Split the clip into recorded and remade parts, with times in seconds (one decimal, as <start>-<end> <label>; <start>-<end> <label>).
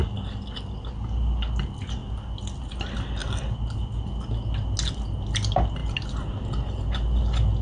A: 0.0-3.2 recorded; 3.2-3.8 remade; 3.8-7.6 recorded